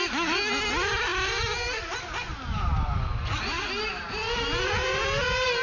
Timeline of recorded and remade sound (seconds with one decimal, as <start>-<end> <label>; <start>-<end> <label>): 0.0-5.6 recorded

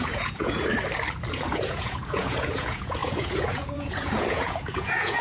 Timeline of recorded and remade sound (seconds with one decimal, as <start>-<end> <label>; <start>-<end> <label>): 0.0-0.7 remade; 0.7-1.3 recorded; 1.3-5.2 remade

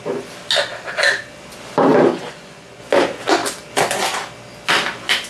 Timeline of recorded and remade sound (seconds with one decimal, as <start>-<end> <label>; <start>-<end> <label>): 0.0-2.1 recorded; 2.1-2.8 remade; 2.8-5.3 recorded

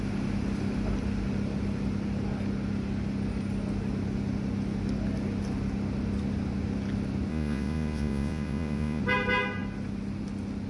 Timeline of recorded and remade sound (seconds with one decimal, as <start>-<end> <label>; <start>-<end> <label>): 0.0-7.3 recorded; 7.3-9.0 remade; 9.0-10.7 recorded

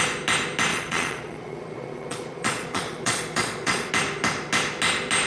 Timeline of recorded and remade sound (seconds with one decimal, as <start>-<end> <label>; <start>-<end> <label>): 0.0-0.7 recorded; 0.7-3.9 remade; 3.9-5.3 recorded

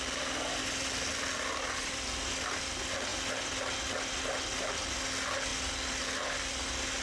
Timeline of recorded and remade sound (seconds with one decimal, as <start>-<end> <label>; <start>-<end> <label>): 0.0-7.0 recorded

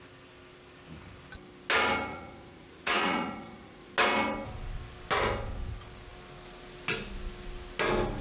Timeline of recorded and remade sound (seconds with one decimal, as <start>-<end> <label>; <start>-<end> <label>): 0.0-2.1 recorded; 2.1-3.9 remade; 3.9-8.2 recorded

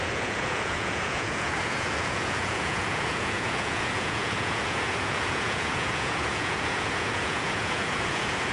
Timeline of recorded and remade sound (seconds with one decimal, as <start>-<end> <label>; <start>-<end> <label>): 0.0-8.5 remade